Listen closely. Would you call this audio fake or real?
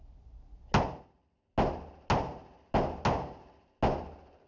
real